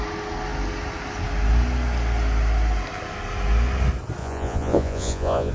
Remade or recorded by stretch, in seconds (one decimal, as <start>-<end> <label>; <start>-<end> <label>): 0.0-4.2 recorded; 4.2-5.5 remade